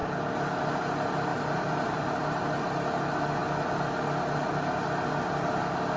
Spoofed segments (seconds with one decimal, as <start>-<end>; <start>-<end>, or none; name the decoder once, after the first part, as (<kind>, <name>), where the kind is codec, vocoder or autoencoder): 1.3-3.0 (vocoder, BigVGAN v2)